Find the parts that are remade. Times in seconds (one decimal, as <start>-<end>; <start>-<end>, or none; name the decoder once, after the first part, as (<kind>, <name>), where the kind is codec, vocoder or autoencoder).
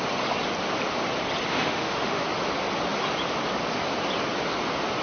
1.5-2.2 (autoencoder, DAC-VAE)